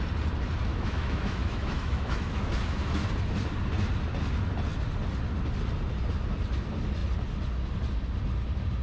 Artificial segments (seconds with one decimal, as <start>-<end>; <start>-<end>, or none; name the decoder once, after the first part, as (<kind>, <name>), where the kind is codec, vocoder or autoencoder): 0.7-3.1 (autoencoder, DAC-VAE)